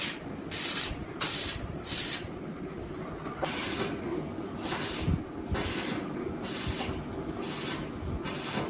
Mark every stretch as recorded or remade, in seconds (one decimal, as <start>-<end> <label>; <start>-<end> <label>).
0.0-8.7 recorded